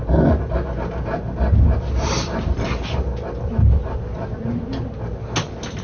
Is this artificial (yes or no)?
no